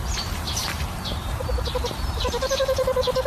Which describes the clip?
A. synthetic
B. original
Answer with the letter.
A